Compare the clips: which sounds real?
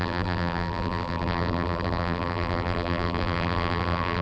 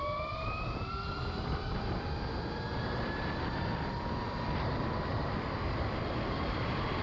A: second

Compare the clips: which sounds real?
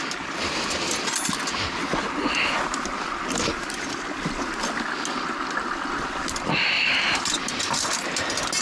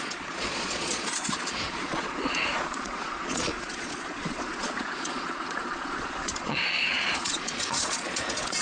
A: first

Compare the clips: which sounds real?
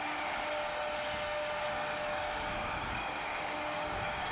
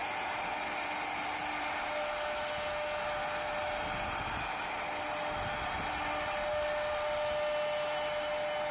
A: second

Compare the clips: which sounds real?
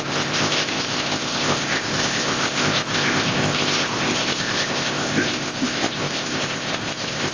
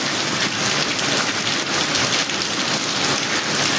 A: second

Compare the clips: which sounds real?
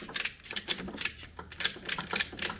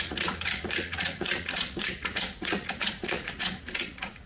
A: first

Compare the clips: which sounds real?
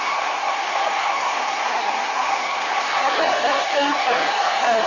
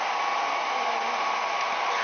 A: second